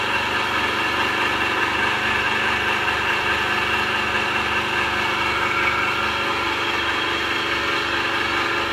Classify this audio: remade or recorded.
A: recorded